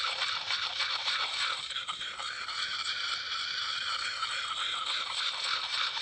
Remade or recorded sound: remade